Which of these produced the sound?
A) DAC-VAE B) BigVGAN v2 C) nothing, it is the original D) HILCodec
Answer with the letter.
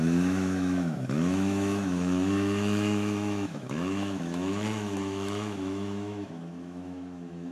A